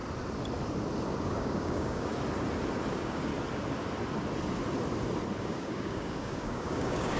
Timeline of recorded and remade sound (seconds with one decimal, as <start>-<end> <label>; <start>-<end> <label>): 0.0-1.2 recorded; 1.2-2.1 remade; 2.1-2.9 recorded; 2.9-3.3 remade; 3.3-5.4 recorded; 5.4-7.2 remade